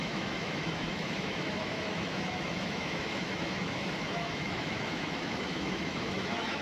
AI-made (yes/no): yes